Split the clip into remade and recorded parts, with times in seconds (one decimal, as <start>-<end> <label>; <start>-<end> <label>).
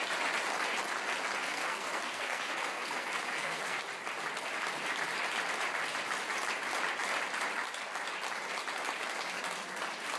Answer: 0.0-1.4 recorded; 1.4-3.8 remade; 3.8-10.2 recorded